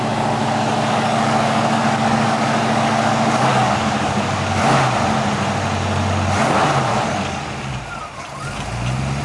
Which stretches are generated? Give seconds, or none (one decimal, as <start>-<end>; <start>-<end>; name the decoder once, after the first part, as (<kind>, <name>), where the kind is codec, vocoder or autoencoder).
0.4-4.6 (codec, DAC); 6.9-7.8